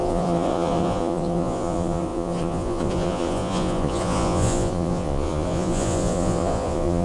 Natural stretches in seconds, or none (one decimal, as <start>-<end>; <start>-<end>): none